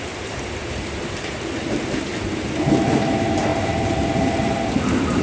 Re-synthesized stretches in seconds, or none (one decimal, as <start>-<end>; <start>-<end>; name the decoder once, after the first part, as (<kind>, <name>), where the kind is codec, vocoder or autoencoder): 0.0-2.1 (vocoder, BigVGAN v2); 2.7-5.2